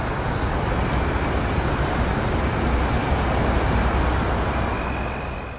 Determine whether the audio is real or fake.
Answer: real